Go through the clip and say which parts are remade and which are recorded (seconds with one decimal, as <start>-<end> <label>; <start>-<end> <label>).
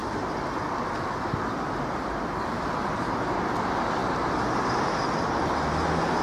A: 0.0-6.2 recorded